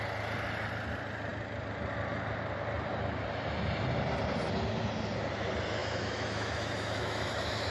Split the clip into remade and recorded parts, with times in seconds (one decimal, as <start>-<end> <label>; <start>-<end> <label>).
0.0-5.8 recorded; 5.8-7.7 remade

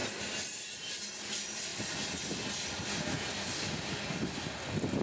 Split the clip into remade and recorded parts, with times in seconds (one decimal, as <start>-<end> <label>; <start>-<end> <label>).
0.0-5.0 recorded

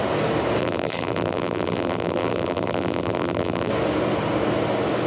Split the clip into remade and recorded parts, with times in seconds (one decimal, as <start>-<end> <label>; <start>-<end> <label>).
0.0-0.6 recorded; 0.6-3.7 remade; 3.7-5.1 recorded

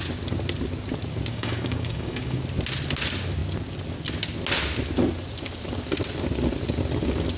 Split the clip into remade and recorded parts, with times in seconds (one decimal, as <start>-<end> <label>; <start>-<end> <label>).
0.0-1.3 recorded; 1.3-2.4 remade; 2.4-7.4 recorded

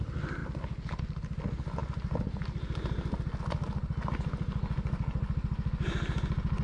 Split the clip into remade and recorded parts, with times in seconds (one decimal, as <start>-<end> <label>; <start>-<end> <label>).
0.0-6.6 recorded

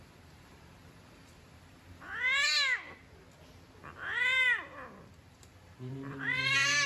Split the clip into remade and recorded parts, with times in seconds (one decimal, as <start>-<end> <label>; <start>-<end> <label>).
0.0-2.1 remade; 2.1-5.2 recorded; 5.2-6.9 remade

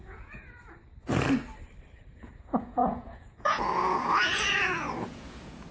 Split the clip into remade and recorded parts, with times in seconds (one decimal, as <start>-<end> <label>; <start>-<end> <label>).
0.0-0.4 remade; 0.4-2.1 recorded; 2.1-5.7 remade